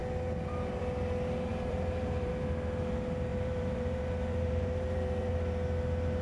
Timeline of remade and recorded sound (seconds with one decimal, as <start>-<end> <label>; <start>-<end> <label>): 0.0-1.5 recorded; 1.5-2.3 remade; 2.3-3.3 recorded; 3.3-5.3 remade; 5.3-6.2 recorded